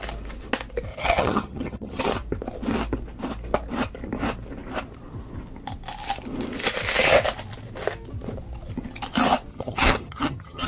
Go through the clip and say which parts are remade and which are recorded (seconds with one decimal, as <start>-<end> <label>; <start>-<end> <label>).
0.0-0.9 recorded; 0.9-2.0 remade; 2.0-9.5 recorded; 9.5-10.7 remade